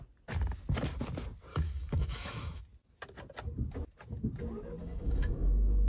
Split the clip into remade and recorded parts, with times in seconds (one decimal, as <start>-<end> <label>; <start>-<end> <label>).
0.0-1.5 recorded; 1.5-2.6 remade; 2.6-4.8 recorded; 4.8-5.9 remade